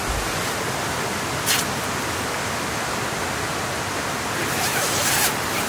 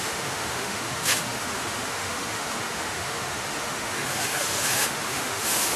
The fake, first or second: second